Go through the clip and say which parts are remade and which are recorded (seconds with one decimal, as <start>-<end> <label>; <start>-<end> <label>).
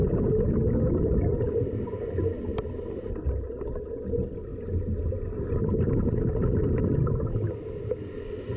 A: 0.0-8.6 recorded